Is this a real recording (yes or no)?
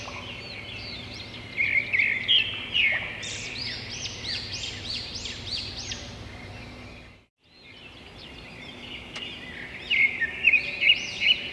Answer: no